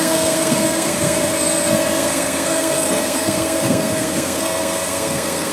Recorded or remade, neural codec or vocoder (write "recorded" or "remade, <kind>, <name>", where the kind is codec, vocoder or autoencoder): remade, codec, SNAC